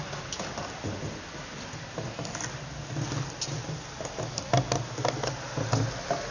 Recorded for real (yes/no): yes